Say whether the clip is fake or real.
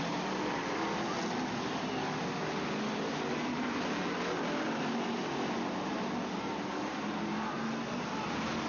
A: real